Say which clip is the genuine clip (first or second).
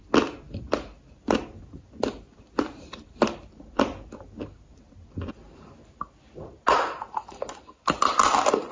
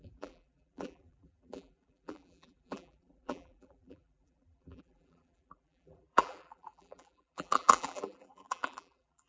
first